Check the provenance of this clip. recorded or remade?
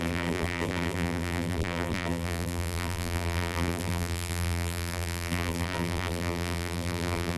remade